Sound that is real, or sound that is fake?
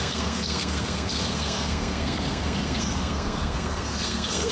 fake